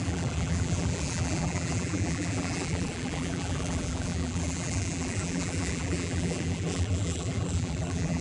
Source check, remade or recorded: remade